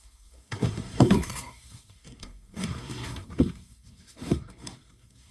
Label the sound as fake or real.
fake